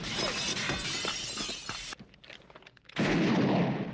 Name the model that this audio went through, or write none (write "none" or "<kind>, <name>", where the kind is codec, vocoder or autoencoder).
none